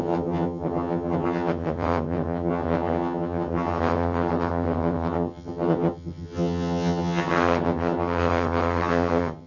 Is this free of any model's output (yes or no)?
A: no